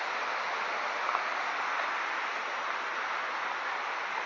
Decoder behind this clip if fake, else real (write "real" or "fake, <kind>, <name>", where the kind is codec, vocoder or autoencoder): real